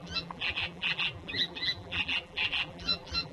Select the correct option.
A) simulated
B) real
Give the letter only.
A